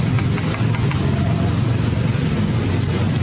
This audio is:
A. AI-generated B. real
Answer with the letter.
B